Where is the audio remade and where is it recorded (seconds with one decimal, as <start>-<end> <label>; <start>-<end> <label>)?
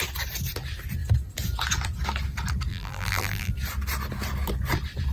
0.0-2.7 recorded; 2.7-3.5 remade; 3.5-5.1 recorded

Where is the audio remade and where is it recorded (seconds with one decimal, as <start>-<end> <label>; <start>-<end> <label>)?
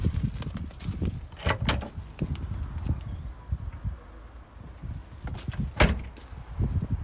0.0-7.0 recorded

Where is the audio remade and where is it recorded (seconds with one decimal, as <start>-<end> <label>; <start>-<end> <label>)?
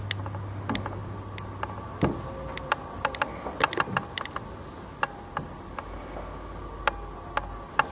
0.0-1.0 recorded; 1.0-4.3 remade; 4.3-7.9 recorded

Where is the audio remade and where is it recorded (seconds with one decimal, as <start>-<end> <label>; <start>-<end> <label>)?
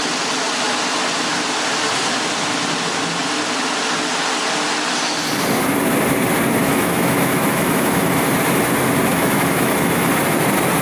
0.0-6.6 recorded; 6.6-8.3 remade; 8.3-9.1 recorded; 9.1-10.1 remade; 10.1-10.8 recorded